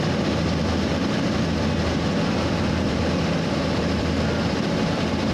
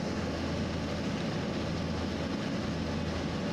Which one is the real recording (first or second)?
second